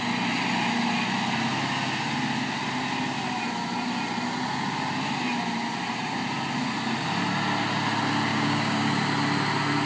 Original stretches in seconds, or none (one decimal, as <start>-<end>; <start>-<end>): 0.0-8.3; 8.9-9.9

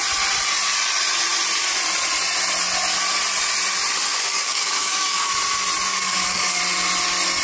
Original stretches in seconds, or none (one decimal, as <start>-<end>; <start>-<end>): 0.0-4.1; 5.3-5.9; 6.6-7.4

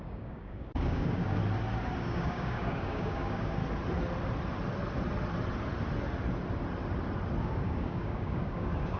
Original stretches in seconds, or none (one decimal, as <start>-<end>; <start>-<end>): 1.4-2.0; 3.6-7.4

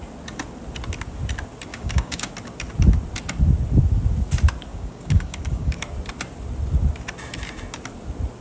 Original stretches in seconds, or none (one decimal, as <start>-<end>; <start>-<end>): 0.0-1.7; 2.3-4.7; 5.8-8.4

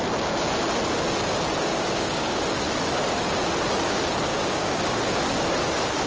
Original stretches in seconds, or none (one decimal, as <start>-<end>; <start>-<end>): 0.0-1.7; 2.4-4.3; 5.0-6.1

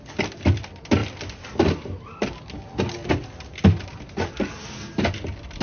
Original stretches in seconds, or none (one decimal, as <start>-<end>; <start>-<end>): 0.0-5.6

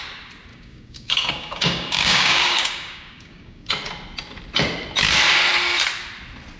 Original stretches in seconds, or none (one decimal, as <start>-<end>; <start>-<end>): 0.0-0.5; 3.7-6.6

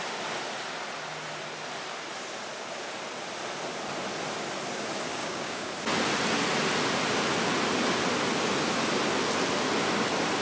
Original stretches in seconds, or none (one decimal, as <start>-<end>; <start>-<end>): 0.0-5.2; 5.7-10.4